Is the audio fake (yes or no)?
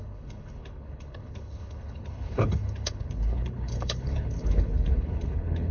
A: yes